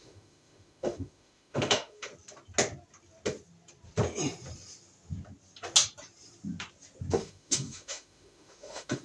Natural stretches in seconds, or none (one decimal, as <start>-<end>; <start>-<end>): 2.1-7.1